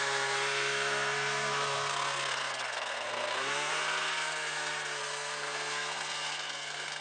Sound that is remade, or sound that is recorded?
remade